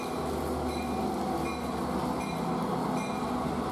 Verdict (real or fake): real